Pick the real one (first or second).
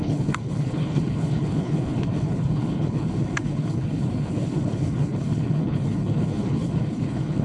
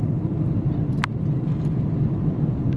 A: second